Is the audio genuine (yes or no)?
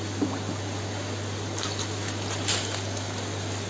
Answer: yes